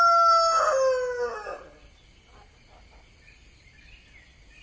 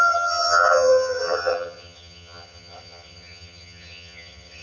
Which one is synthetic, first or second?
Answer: second